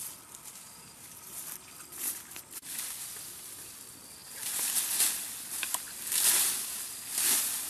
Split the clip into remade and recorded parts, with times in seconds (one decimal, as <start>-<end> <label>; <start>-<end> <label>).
0.0-7.7 recorded